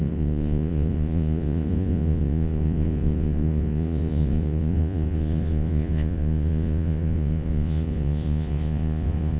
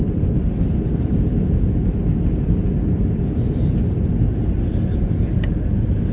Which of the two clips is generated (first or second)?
first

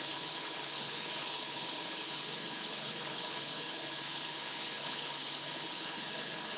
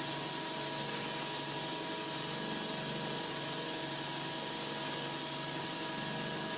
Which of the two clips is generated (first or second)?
first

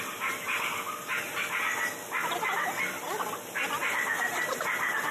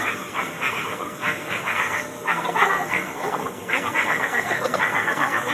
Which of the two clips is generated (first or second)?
second